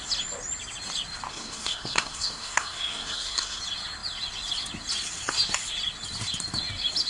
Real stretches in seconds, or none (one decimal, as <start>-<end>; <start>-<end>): 0.0-1.3; 3.6-7.1